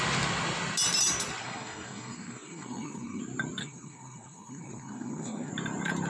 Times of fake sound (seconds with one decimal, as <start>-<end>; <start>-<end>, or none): 1.4-3.2; 3.6-5.5